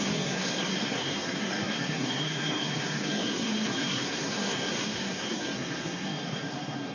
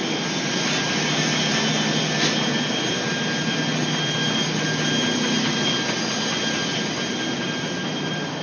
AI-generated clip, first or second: first